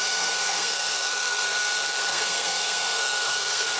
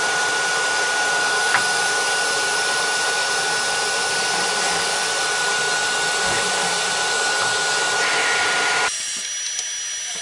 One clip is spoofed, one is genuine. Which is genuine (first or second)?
second